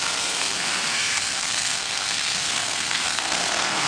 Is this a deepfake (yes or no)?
yes